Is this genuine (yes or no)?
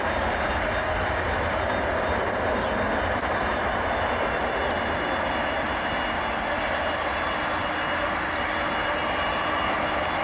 yes